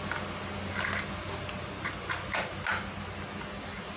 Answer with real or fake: real